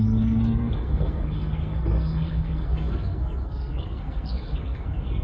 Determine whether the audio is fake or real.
fake